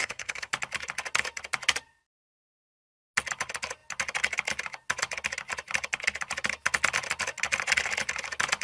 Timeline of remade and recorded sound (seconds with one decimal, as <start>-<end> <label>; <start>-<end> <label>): 0.0-0.5 remade; 0.5-8.6 recorded